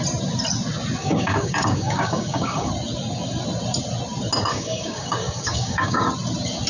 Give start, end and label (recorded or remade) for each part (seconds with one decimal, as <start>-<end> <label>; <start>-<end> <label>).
0.0-1.0 recorded; 1.0-2.7 remade; 2.7-4.5 recorded; 4.5-6.1 remade; 6.1-6.7 recorded